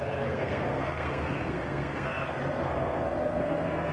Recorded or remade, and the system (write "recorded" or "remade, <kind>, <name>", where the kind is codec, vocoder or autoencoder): remade, codec, SNAC